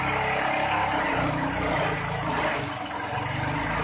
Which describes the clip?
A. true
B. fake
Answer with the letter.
A